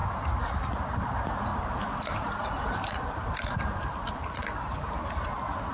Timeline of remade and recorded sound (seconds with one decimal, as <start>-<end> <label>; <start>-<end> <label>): 0.0-0.5 remade; 0.5-1.5 recorded; 1.5-4.9 remade; 4.9-5.7 recorded